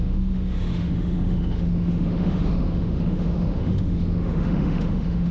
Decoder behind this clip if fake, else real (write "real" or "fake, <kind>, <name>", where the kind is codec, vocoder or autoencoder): fake, autoencoder, DAC-VAE